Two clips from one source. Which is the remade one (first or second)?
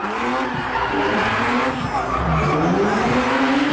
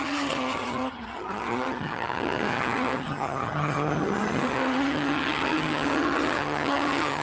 second